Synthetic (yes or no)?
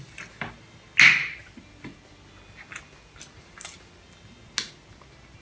no